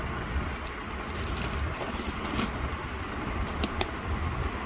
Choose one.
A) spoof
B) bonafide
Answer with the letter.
B